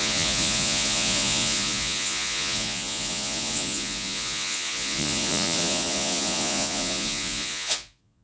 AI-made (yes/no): yes